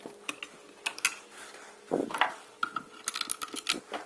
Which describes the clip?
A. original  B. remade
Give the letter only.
A